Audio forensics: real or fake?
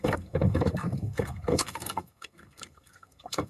fake